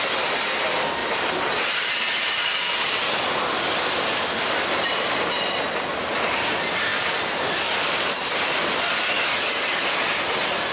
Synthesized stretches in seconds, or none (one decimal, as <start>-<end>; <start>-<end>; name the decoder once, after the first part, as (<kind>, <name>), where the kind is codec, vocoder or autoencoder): 1.0-3.4 (vocoder, BigVGAN v2)